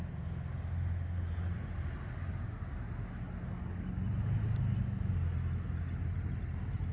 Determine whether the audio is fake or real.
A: real